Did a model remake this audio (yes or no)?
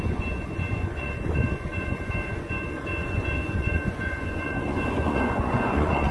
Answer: yes